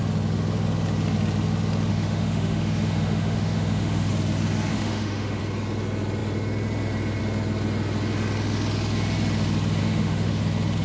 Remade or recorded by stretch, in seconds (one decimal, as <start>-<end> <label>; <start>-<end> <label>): 0.0-1.9 recorded; 1.9-4.1 remade; 4.1-4.7 recorded; 4.7-5.4 remade; 5.4-9.8 recorded; 9.8-10.4 remade; 10.4-10.8 recorded